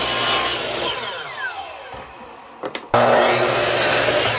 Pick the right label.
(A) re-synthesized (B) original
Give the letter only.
B